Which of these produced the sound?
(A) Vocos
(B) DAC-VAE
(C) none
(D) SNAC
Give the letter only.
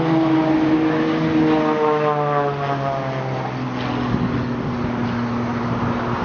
C